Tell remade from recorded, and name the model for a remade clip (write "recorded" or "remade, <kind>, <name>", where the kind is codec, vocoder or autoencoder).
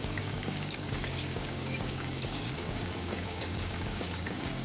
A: remade, codec, DAC